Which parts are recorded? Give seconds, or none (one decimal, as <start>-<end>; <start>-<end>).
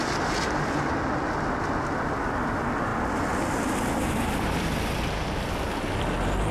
0.0-6.5